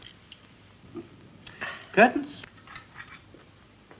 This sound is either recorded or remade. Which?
recorded